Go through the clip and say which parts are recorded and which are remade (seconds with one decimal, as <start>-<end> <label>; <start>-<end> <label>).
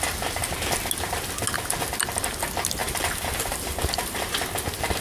0.0-2.8 recorded; 2.8-4.3 remade; 4.3-5.0 recorded